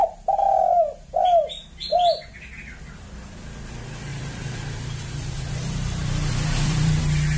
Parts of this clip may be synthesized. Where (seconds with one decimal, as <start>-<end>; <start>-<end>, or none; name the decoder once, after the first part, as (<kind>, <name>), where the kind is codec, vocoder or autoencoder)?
4.1-7.0 (vocoder, BigVGAN v2)